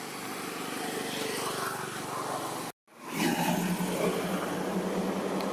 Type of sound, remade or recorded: recorded